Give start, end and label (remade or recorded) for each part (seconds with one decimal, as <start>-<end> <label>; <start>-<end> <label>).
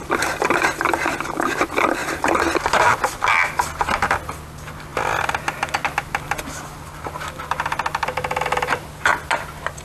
0.0-9.8 recorded